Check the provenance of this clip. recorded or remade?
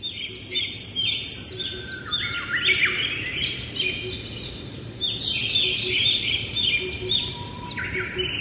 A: recorded